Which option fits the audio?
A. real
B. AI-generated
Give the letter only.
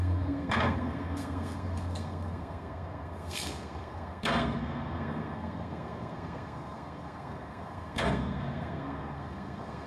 B